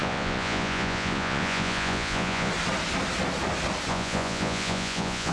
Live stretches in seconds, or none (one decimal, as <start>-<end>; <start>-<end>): 2.5-3.9